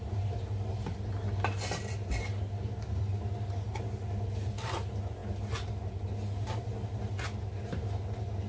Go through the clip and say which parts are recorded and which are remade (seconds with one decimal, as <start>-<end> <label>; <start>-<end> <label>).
0.0-8.5 recorded